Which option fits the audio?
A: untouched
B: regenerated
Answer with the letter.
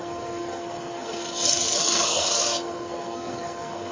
B